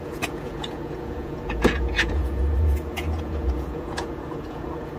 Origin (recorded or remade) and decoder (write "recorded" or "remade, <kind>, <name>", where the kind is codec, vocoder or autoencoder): remade, vocoder, Vocos